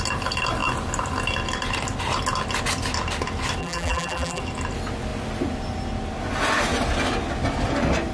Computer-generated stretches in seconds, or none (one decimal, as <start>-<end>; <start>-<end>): 3.6-4.4